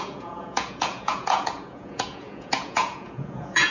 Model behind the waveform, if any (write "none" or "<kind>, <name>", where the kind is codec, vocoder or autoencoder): vocoder, Vocos